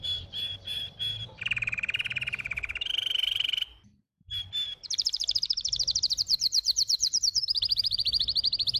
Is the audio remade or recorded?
remade